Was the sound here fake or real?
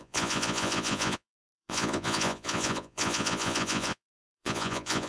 fake